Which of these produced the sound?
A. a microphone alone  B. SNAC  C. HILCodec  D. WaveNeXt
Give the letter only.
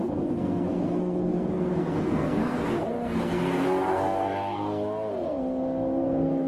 B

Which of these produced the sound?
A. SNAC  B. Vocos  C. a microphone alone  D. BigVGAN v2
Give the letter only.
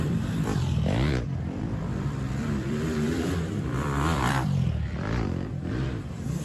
D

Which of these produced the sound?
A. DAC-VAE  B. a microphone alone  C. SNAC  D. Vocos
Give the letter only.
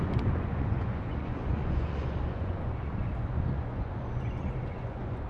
D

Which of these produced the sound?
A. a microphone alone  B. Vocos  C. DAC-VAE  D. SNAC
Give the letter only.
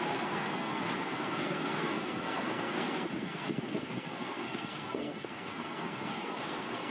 D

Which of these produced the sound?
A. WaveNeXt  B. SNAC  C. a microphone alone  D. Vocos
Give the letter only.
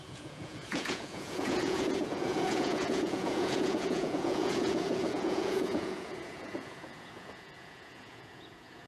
D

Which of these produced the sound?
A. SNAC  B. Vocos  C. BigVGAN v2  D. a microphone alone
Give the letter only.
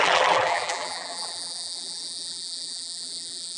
C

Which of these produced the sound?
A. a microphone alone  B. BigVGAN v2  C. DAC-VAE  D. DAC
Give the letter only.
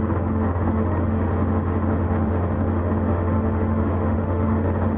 C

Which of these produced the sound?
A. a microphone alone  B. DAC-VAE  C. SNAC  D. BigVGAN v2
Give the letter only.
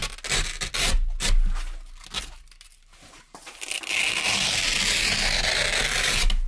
A